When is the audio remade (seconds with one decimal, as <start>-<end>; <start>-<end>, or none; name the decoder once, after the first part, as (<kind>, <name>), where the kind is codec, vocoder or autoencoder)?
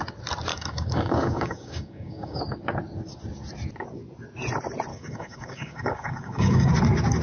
0.5-2.4 (codec, DAC); 4.9-6.7